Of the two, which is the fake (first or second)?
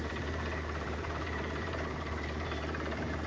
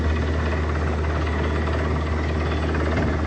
first